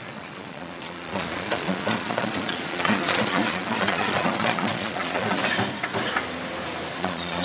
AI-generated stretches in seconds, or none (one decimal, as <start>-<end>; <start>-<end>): 0.0-5.4; 7.0-7.4